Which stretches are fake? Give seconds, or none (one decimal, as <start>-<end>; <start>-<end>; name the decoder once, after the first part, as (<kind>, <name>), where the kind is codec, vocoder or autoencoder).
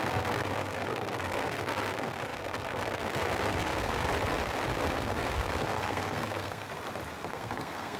0.0-4.1 (codec, SNAC); 4.7-6.7; 7.3-8.0